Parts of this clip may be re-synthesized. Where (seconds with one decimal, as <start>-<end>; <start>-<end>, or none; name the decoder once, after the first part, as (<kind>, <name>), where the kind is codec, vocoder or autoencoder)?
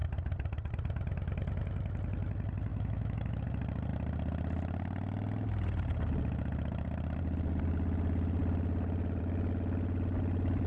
2.7-3.4 (autoencoder, DAC-VAE)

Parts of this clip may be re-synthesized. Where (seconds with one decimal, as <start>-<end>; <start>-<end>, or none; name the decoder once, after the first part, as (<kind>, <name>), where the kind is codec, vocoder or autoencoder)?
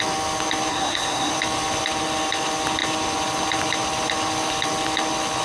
0.7-1.3 (codec, SNAC)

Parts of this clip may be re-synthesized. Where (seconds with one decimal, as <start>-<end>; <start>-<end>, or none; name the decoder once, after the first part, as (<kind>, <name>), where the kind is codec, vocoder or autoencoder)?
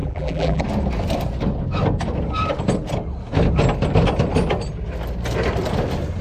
0.0-0.6 (vocoder, BigVGAN v2)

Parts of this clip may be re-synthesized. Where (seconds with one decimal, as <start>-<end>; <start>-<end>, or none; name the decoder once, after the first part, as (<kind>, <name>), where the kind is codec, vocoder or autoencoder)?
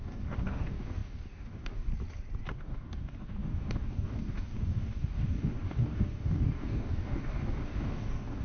0.0-1.9 (codec, DAC); 2.5-8.4